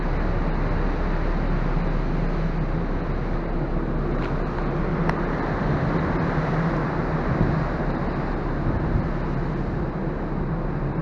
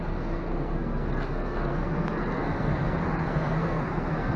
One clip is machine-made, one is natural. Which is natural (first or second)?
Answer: first